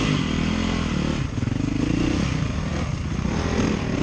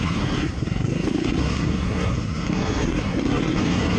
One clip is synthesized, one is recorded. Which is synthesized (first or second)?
second